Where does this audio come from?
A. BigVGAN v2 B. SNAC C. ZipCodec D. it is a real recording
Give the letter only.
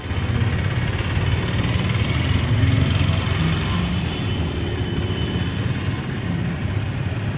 D